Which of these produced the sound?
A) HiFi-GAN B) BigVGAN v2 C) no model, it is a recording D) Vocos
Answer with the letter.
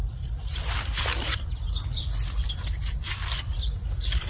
B